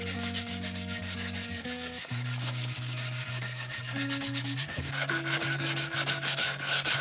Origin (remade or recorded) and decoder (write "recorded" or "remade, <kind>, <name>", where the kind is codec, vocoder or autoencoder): remade, codec, DAC